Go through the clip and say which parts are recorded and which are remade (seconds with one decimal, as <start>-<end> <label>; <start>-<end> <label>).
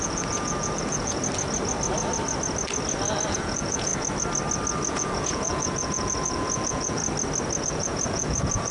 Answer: 0.0-1.2 remade; 1.2-3.3 recorded; 3.3-3.9 remade; 3.9-4.9 recorded; 4.9-7.0 remade; 7.0-7.6 recorded; 7.6-8.7 remade